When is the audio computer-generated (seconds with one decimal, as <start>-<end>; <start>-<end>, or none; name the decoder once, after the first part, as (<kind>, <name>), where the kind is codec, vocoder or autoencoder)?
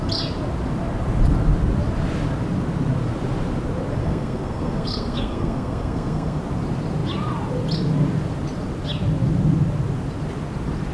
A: 4.0-6.4 (codec, SNAC)